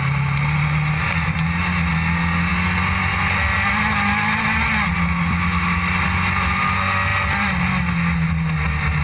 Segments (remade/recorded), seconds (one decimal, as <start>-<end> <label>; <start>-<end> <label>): 0.0-9.0 recorded